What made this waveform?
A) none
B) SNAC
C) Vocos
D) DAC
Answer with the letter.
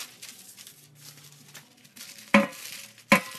A